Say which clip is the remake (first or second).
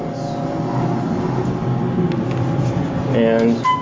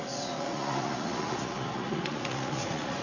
second